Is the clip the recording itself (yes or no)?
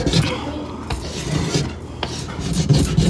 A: yes